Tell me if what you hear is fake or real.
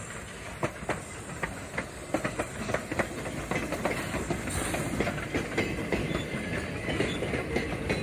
real